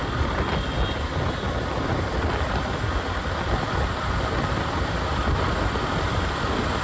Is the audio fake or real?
real